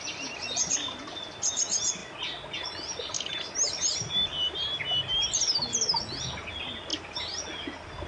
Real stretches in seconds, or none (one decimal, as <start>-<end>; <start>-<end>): 0.0-6.9; 7.4-8.1